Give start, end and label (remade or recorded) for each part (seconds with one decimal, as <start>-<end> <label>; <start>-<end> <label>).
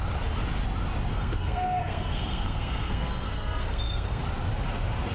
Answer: 0.0-1.1 recorded; 1.1-4.2 remade; 4.2-5.1 recorded